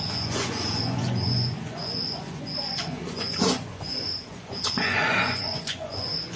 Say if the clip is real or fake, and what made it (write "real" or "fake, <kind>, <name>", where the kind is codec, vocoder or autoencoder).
fake, vocoder, Vocos